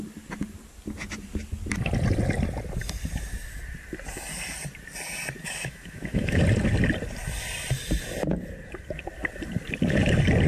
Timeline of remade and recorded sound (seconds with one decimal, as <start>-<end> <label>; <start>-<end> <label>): 0.0-5.4 recorded; 5.4-6.4 remade; 6.4-10.5 recorded